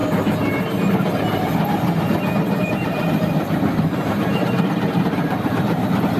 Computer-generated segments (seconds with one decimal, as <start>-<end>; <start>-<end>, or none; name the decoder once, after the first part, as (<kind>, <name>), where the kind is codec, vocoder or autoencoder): 2.6-6.2 (vocoder, BigVGAN v2)